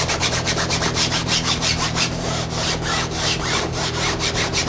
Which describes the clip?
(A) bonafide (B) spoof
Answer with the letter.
B